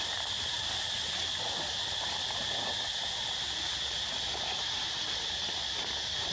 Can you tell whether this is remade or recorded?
recorded